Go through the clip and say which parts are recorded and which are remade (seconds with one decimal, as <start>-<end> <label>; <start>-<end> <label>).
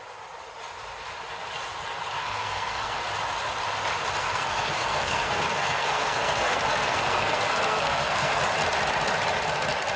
0.0-2.2 recorded; 2.2-3.0 remade; 3.0-4.2 recorded; 4.2-8.4 remade; 8.4-10.0 recorded